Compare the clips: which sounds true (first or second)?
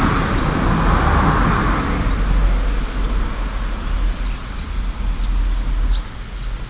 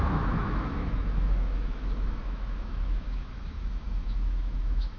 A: first